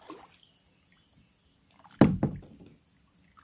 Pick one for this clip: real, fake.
real